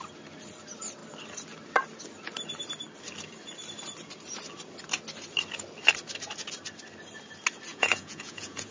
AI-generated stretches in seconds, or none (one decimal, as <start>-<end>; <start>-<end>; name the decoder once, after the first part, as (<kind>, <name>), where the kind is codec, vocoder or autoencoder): 7.7-8.7 (vocoder, Vocos)